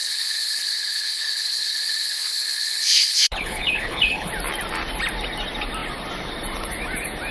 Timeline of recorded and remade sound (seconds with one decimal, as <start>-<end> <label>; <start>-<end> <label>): 0.0-4.3 remade; 4.3-7.3 recorded